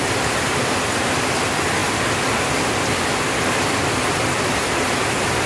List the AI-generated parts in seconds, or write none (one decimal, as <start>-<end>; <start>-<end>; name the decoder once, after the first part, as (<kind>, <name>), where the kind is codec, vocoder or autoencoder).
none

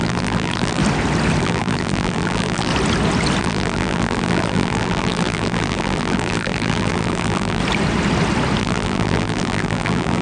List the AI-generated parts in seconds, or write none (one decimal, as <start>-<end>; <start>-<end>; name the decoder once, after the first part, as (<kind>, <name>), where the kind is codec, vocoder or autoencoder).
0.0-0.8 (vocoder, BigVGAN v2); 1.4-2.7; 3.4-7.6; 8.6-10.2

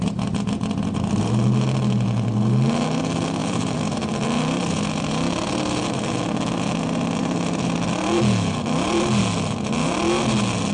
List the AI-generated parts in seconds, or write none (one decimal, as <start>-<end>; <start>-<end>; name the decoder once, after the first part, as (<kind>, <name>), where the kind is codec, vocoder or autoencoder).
3.4-5.1 (vocoder, BigVGAN v2); 7.2-9.2

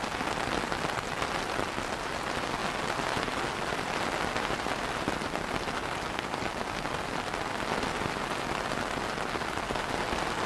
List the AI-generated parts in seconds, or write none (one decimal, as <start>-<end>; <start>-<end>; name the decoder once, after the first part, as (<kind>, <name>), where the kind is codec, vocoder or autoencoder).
none

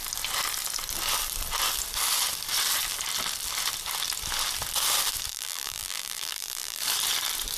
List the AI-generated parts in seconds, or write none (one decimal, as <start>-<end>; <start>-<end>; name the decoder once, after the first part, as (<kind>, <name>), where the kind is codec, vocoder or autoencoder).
5.3-6.8 (vocoder, BigVGAN v2)

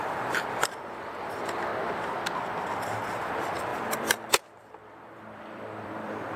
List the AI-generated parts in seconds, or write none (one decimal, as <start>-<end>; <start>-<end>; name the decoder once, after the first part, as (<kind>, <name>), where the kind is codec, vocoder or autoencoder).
0.0-1.7 (vocoder, BigVGAN v2); 3.2-6.4

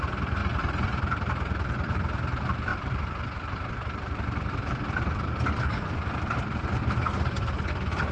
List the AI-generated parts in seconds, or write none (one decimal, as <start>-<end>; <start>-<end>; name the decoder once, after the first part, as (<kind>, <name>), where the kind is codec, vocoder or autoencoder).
0.4-1.9 (vocoder, BigVGAN v2); 2.7-6.8